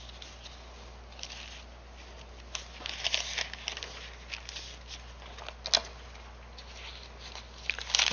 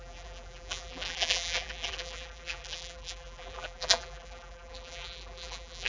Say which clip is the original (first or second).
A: first